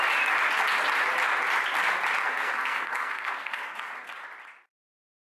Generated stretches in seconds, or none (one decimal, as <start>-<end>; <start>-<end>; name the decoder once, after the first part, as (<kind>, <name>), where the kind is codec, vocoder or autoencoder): 2.2-3.9 (codec, SNAC)